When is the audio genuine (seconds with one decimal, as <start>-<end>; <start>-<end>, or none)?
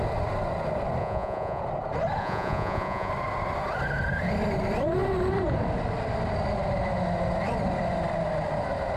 0.0-1.0; 1.6-2.2; 3.1-9.0